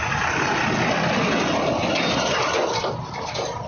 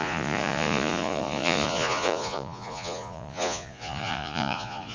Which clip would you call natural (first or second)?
first